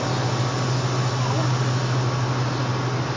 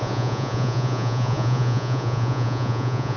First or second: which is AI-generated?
second